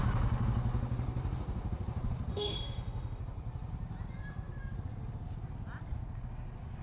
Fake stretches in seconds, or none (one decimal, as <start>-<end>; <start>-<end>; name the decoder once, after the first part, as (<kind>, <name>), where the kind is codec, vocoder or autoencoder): 2.3-3.2 (autoencoder, DAC-VAE)